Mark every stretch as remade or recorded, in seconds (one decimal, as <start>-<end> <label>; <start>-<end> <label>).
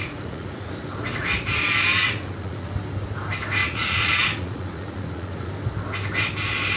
0.0-0.7 remade; 0.7-1.9 recorded; 1.9-2.7 remade; 2.7-3.6 recorded; 3.6-5.5 remade; 5.5-6.8 recorded